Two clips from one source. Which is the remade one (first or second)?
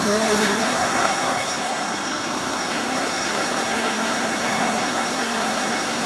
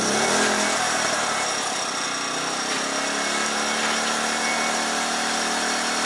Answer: first